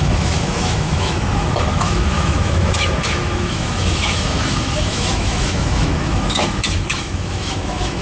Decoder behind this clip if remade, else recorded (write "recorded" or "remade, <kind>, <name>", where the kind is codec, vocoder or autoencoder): remade, autoencoder, DAC-VAE